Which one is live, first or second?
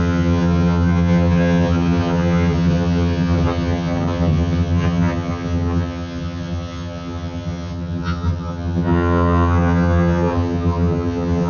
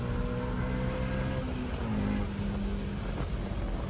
second